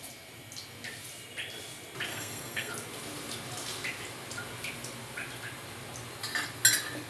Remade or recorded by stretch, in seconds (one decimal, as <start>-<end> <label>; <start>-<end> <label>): 0.0-2.1 recorded; 2.1-2.7 remade; 2.7-7.1 recorded